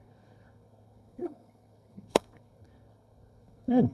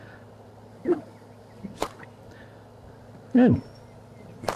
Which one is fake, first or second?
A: first